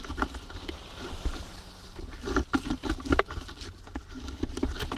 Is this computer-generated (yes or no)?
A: no